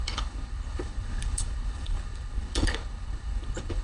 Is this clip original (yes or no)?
no